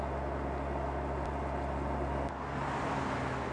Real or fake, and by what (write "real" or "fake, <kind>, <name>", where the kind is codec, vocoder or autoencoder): real